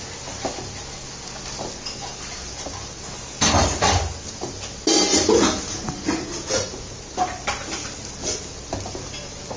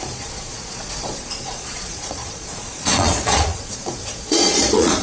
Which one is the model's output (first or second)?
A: second